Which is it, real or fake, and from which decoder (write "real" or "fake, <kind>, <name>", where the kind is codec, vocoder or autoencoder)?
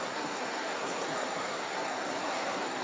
fake, codec, SNAC